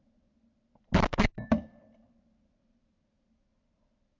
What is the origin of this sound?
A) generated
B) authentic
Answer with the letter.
B